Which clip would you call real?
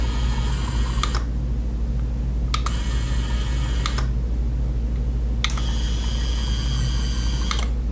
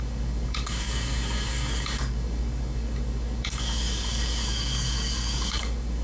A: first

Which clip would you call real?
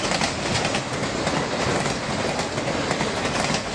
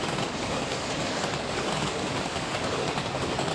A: first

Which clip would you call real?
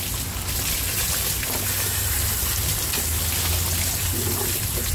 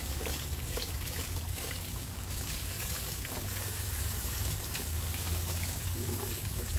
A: first